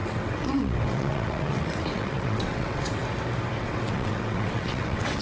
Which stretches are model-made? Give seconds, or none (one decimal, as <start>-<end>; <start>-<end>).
0.0-3.0; 3.6-5.2